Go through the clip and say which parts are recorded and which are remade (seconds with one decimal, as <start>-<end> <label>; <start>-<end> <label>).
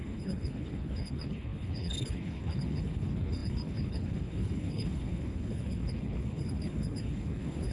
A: 0.0-7.7 remade